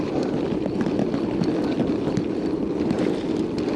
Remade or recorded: recorded